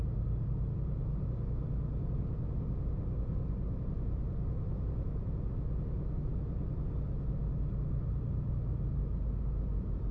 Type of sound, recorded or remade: recorded